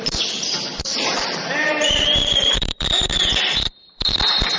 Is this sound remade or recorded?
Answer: remade